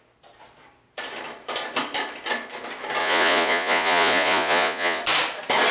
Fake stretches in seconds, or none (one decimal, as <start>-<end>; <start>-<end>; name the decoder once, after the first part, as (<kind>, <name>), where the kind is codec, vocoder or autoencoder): 3.0-5.0 (vocoder, Vocos)